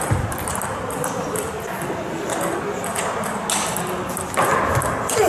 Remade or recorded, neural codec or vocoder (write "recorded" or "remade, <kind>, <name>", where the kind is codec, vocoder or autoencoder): recorded